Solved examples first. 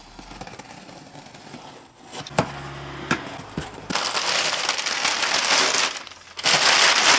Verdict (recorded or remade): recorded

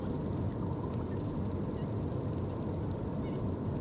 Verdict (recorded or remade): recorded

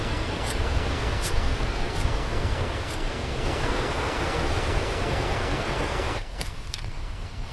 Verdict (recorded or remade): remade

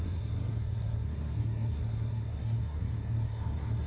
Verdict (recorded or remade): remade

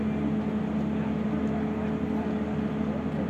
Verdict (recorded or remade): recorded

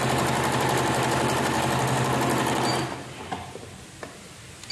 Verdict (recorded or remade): recorded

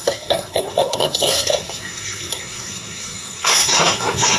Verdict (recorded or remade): remade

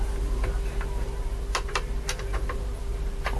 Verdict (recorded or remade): recorded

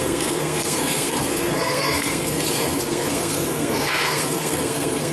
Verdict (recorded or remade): remade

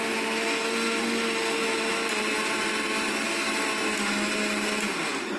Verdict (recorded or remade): recorded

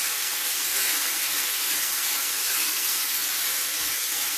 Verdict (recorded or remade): remade